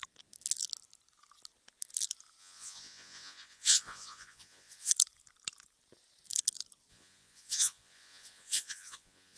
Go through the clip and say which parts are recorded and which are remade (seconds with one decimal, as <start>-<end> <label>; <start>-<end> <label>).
0.0-2.4 recorded; 2.4-4.9 remade; 4.9-6.9 recorded; 6.9-9.4 remade